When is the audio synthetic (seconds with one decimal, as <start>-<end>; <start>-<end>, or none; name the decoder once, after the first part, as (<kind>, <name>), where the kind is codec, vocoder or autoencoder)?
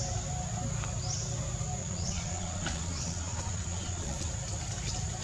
1.8-4.3 (vocoder, Vocos)